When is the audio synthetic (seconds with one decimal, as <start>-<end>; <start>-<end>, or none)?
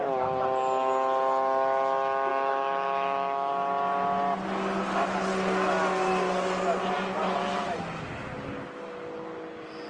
2.3-3.5